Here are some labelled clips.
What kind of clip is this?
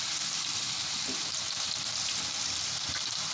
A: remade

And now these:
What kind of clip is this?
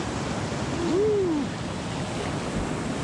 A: recorded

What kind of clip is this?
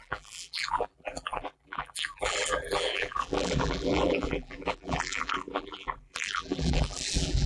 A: remade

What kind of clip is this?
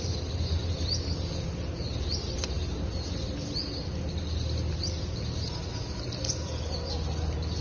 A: recorded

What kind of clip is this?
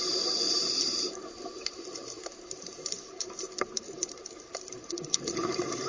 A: remade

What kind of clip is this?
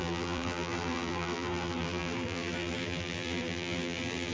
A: remade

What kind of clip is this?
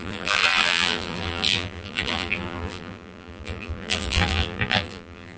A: remade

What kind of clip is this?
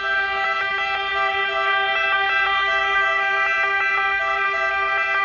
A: remade